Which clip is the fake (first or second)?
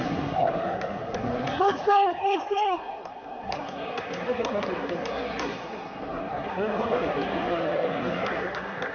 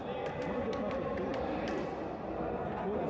first